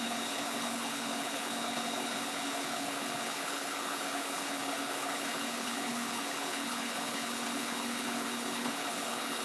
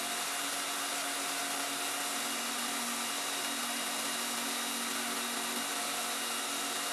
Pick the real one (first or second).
second